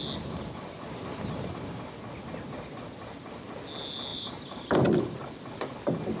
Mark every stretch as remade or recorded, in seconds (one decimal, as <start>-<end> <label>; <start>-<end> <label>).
0.0-4.1 recorded; 4.1-5.0 remade; 5.0-6.2 recorded